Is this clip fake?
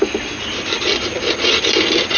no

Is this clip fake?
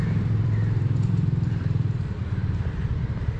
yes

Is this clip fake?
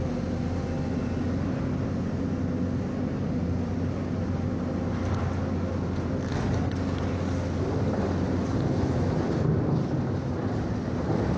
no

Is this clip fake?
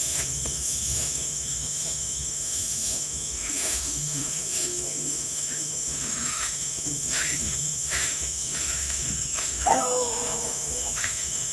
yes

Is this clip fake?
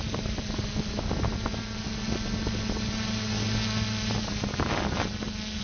no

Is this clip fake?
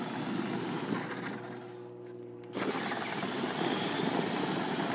no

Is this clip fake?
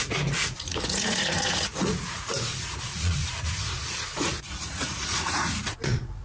yes